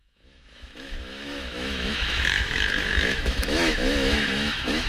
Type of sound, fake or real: fake